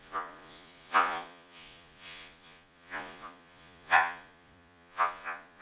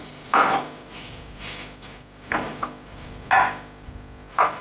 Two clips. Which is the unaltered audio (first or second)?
second